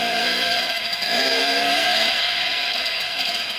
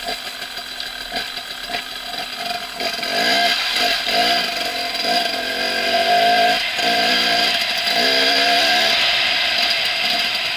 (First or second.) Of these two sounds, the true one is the second